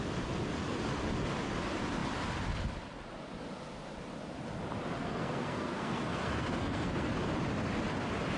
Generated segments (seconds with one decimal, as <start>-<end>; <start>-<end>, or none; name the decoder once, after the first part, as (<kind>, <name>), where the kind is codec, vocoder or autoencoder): 5.0-7.1 (codec, SNAC)